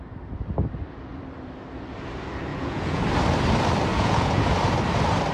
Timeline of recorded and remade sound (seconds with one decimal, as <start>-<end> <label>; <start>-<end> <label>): 0.0-2.5 recorded; 2.5-3.0 remade; 3.0-3.9 recorded; 3.9-4.4 remade; 4.4-5.3 recorded